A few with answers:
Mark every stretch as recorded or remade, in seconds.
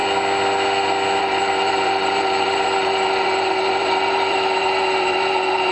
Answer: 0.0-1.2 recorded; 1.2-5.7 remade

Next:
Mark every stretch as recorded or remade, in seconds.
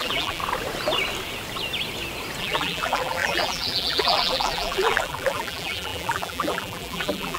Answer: 0.0-0.4 remade; 0.4-2.4 recorded; 2.4-7.4 remade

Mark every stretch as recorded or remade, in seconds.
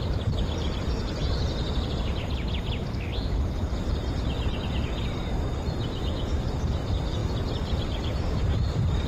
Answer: 0.0-3.1 remade; 3.1-4.6 recorded; 4.6-9.1 remade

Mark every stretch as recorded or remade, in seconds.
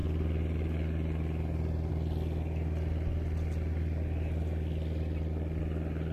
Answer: 0.0-6.1 recorded